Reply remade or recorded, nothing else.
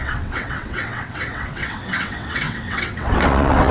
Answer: remade